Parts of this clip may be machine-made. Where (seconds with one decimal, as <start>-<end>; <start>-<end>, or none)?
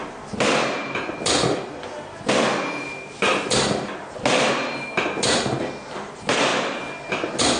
none